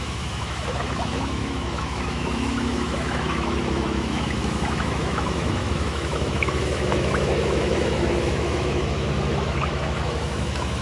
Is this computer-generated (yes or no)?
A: yes